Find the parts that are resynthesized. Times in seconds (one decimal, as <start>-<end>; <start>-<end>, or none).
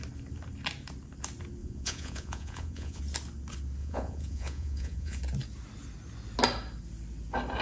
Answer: 1.6-3.0; 3.8-5.2